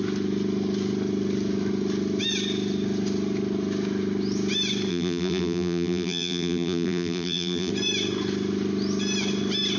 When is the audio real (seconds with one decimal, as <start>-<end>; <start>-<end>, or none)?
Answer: 0.0-4.9; 7.7-9.8